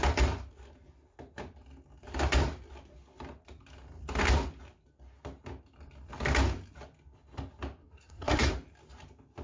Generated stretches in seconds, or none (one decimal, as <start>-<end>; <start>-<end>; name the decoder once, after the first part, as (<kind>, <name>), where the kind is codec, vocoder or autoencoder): 7.8-8.5 (codec, SNAC)